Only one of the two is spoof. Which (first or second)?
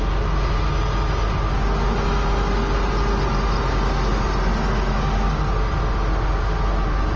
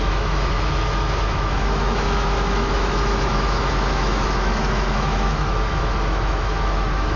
second